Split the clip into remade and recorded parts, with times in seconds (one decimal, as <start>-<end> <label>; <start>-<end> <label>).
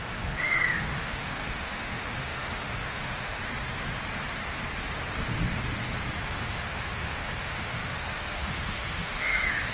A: 0.0-3.4 remade; 3.4-6.2 recorded; 6.2-9.7 remade